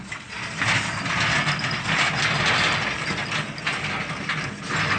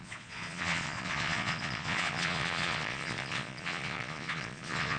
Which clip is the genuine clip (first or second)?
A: first